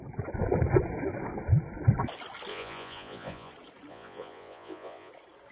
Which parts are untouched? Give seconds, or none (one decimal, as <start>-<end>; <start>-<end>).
0.0-2.5; 3.5-3.9; 5.1-5.5